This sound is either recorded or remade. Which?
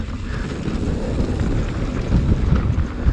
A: recorded